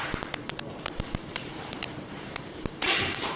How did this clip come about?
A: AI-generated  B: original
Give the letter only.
A